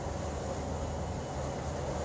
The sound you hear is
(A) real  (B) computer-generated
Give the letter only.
A